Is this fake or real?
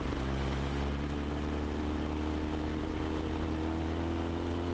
real